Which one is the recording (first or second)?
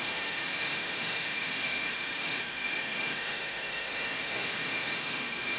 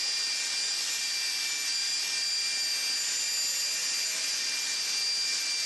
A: second